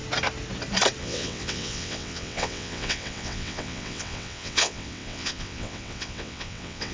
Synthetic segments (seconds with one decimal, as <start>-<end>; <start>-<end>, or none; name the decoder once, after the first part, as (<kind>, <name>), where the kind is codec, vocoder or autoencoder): 1.0-6.9 (vocoder, WaveNeXt)